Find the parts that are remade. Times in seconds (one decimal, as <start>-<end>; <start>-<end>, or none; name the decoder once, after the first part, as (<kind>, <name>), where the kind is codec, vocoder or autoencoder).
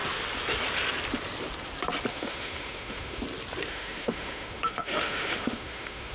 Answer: 2.1-3.2 (autoencoder, DAC-VAE); 3.7-6.1